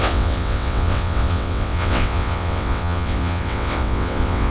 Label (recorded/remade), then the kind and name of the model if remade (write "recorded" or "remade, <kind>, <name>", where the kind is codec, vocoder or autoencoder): remade, vocoder, WaveNeXt